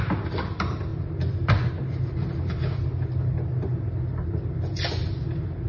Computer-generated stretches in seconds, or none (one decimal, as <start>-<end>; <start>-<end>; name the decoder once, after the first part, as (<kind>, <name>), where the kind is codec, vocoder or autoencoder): none